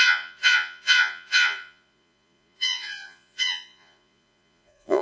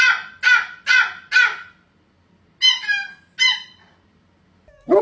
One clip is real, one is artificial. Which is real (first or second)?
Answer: second